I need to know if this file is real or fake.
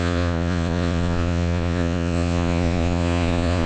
fake